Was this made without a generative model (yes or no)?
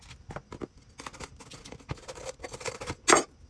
yes